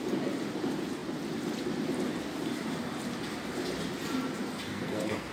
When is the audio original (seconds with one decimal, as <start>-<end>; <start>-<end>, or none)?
0.0-4.4